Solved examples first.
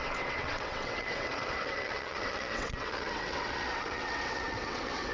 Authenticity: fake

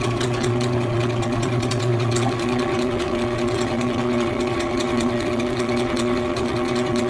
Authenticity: fake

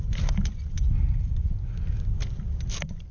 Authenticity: real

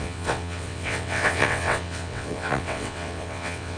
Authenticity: fake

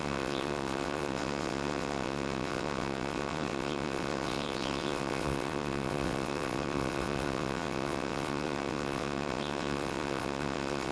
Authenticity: fake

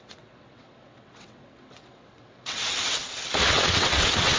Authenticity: fake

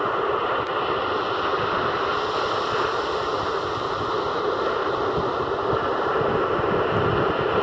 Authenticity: real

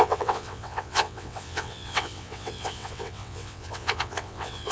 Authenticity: fake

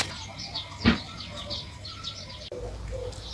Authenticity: real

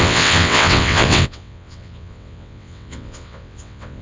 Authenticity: fake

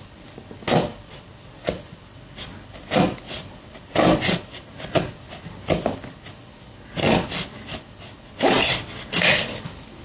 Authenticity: real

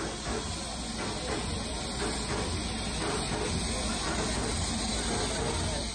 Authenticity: real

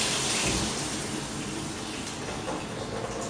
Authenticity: real